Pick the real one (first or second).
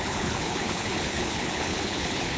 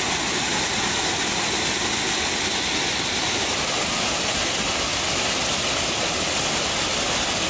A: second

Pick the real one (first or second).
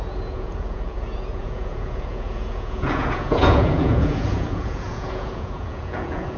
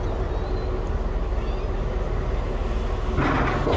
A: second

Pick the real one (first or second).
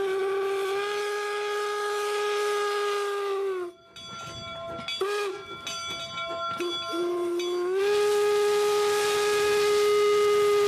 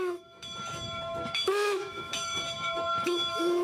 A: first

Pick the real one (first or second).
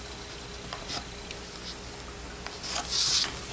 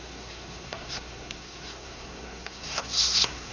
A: first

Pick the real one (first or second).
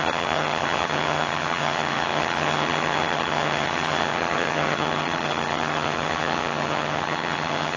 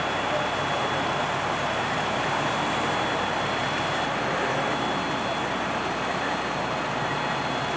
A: second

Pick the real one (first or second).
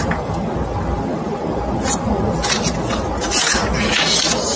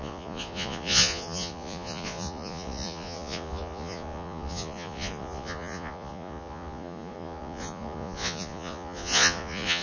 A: first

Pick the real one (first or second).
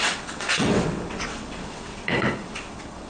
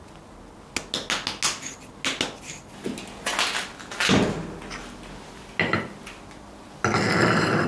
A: second